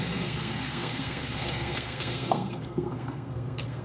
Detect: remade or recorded remade